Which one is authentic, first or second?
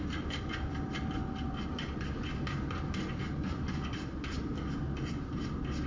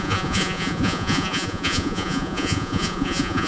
first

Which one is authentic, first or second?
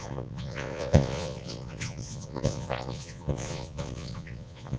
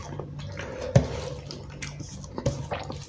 second